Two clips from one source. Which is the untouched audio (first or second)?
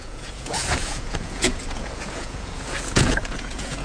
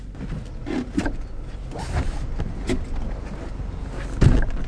second